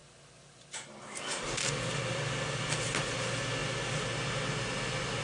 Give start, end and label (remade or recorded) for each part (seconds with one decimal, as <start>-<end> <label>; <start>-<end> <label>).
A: 0.0-5.2 recorded